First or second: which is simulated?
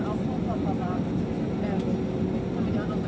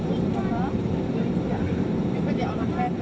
second